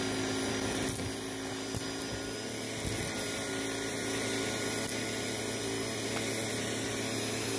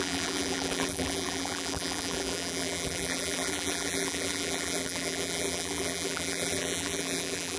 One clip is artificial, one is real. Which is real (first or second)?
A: first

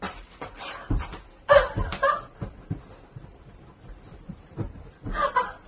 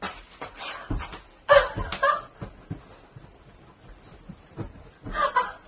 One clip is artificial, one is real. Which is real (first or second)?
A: second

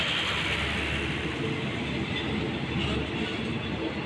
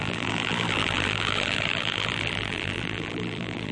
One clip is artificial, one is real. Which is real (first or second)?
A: first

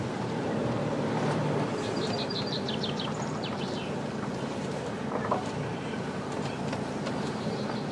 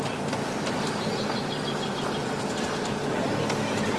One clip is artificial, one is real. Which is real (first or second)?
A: second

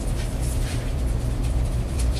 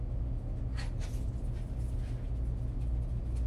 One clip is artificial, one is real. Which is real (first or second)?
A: second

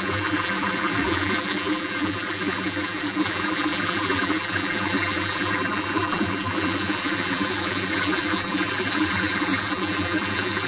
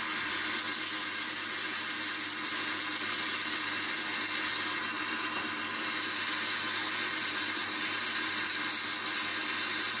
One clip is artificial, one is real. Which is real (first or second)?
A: second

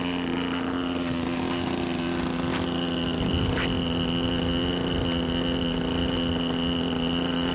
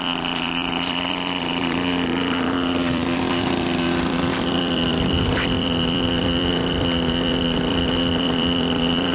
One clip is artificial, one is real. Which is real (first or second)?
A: first